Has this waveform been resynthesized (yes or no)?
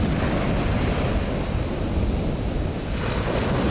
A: no